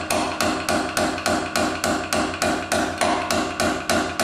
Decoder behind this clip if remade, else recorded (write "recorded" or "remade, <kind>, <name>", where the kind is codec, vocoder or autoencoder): recorded